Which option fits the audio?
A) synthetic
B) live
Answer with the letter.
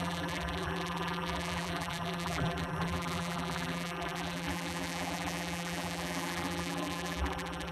A